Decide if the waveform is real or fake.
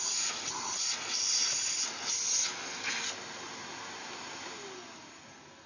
real